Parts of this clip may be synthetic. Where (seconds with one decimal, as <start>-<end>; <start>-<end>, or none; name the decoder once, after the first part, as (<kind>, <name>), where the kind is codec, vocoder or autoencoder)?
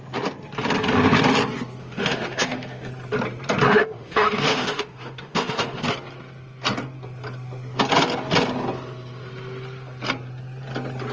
1.8-2.9 (autoencoder, DAC-VAE); 3.7-5.8